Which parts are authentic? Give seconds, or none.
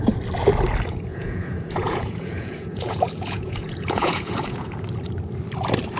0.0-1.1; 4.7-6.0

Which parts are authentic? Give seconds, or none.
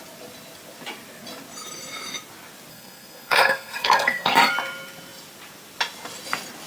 0.0-2.7; 4.5-6.7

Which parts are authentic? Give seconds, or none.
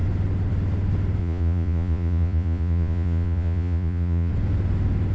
0.0-1.2; 4.3-5.1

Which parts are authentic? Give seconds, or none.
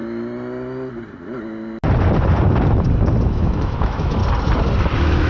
0.0-3.2; 4.2-4.8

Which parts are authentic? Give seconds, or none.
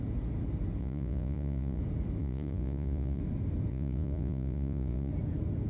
0.0-0.8; 1.8-2.2; 3.2-3.7; 5.1-5.7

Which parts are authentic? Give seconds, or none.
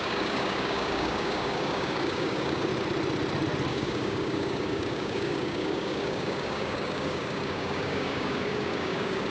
2.7-3.7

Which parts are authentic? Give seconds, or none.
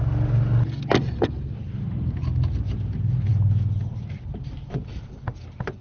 0.0-5.8